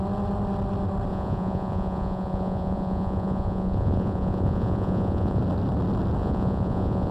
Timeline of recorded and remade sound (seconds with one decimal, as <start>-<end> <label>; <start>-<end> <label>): 0.0-1.1 recorded; 1.1-5.4 remade; 5.4-6.2 recorded; 6.2-7.1 remade